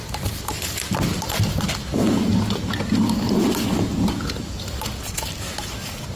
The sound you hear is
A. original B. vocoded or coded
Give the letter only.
A